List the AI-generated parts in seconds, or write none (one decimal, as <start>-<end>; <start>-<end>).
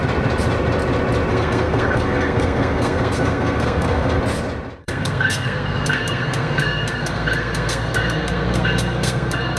1.3-4.2; 4.8-9.6